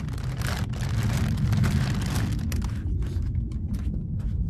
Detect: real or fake real